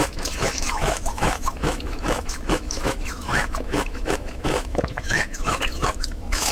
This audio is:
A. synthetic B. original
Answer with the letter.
A